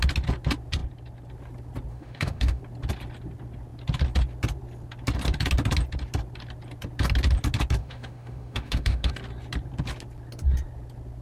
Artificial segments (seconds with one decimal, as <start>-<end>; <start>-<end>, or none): 1.9-2.6; 7.8-9.1